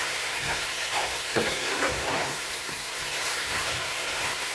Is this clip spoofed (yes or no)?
yes